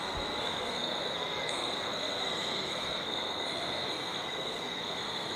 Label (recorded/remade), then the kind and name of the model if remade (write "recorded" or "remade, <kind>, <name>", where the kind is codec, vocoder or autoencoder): remade, codec, SNAC